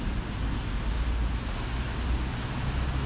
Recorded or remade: recorded